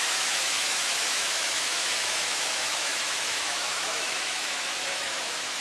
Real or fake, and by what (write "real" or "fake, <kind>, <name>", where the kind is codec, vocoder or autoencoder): fake, autoencoder, DAC-VAE